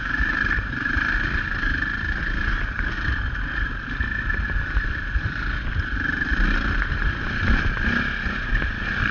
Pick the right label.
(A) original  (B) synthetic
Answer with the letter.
A